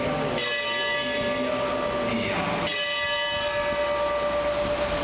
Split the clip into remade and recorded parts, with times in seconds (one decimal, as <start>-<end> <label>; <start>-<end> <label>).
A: 0.0-5.0 recorded